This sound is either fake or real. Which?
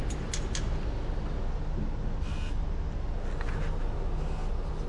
real